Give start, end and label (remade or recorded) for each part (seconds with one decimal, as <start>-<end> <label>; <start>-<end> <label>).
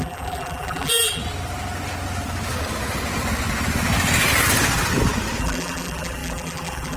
0.0-1.2 remade; 1.2-5.4 recorded; 5.4-7.0 remade